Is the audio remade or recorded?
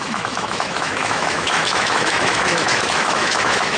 remade